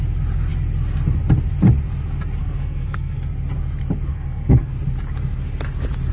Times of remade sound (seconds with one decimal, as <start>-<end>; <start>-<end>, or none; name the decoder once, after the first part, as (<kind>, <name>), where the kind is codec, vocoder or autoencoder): 2.4-3.2 (codec, SNAC); 4.1-4.7